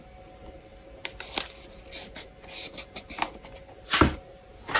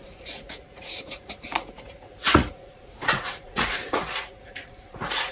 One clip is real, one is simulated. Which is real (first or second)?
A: first